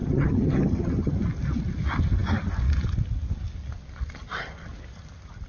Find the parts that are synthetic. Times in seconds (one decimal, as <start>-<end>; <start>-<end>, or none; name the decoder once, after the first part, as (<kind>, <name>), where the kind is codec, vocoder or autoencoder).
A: 0.0-1.1 (vocoder, HiFi-GAN)